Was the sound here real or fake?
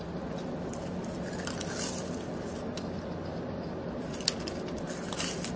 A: real